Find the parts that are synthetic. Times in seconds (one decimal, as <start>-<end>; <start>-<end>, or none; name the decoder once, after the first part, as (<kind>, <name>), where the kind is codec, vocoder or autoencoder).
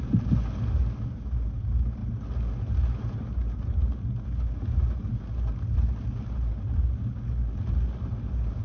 none